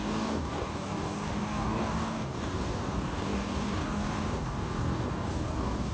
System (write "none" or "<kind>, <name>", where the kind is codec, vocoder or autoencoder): codec, DAC